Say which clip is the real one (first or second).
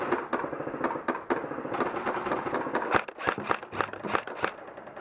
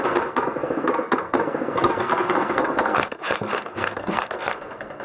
first